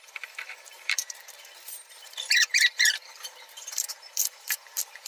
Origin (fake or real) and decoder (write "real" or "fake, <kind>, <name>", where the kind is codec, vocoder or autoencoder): fake, vocoder, BigVGAN v2